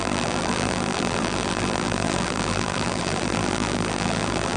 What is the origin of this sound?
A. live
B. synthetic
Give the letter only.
B